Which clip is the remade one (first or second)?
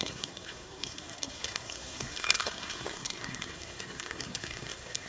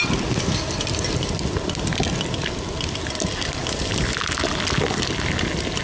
first